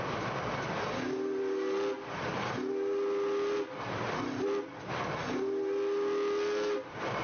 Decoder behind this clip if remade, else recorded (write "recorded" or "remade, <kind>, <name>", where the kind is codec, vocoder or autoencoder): recorded